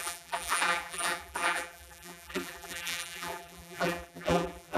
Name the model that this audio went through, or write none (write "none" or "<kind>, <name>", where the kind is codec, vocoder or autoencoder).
vocoder, BigVGAN v2